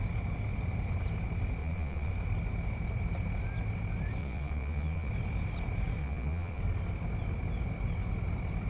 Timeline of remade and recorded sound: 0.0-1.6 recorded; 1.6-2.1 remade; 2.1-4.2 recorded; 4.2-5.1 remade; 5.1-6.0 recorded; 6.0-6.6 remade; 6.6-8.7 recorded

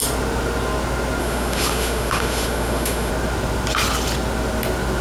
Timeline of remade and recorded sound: 0.0-1.2 recorded; 1.2-3.1 remade; 3.1-5.0 recorded

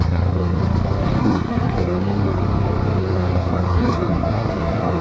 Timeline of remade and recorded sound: 0.0-0.6 remade; 0.6-1.2 recorded; 1.2-2.4 remade; 2.4-3.0 recorded; 3.0-5.0 remade

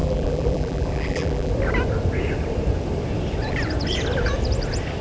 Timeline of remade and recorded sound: 0.0-1.5 remade; 1.5-5.0 recorded

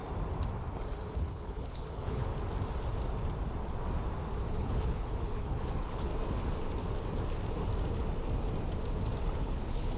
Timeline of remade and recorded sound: 0.0-1.2 recorded; 1.2-2.3 remade; 2.3-4.5 recorded; 4.5-6.1 remade; 6.1-9.2 recorded; 9.2-10.0 remade

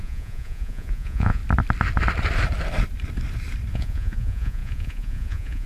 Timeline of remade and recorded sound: 0.0-1.4 remade; 1.4-3.7 recorded; 3.7-5.7 remade

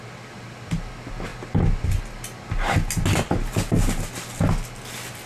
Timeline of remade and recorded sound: 0.0-5.3 recorded